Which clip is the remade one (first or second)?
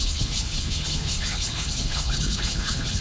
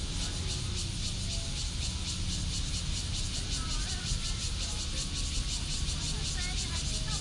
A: first